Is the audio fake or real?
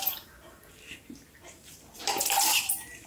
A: fake